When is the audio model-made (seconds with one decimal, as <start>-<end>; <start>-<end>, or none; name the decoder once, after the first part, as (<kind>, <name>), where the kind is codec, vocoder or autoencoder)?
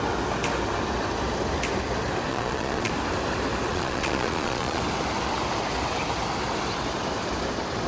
2.3-2.9 (vocoder, Vocos); 3.7-4.8